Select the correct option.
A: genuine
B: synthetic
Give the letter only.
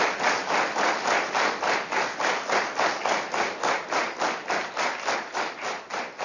A